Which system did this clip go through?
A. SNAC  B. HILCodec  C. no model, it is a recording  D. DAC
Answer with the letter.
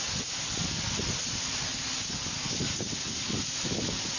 C